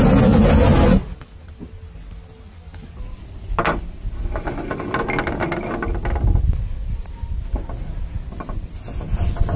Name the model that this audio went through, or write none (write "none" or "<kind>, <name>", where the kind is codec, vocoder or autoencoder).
none